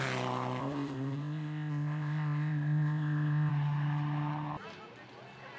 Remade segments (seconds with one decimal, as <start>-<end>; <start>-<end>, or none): 0.6-3.5

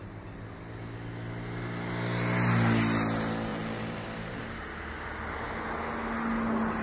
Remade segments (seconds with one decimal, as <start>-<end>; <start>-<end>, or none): 3.5-4.4

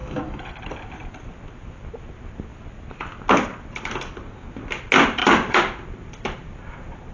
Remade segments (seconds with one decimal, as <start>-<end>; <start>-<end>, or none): 0.0-0.5

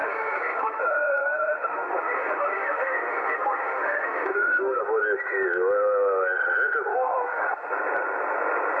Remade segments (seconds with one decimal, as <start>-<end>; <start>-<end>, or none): 0.0-4.8; 6.9-7.7

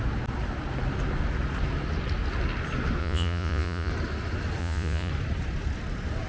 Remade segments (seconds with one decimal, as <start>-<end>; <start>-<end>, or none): 3.0-3.9; 4.6-5.1

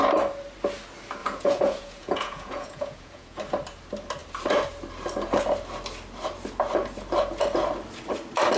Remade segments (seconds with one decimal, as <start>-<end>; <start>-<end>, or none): 1.2-3.4